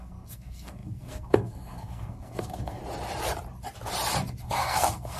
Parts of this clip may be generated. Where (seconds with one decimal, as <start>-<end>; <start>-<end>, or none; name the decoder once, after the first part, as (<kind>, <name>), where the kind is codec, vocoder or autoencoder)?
0.0-2.8 (codec, SNAC); 4.4-5.2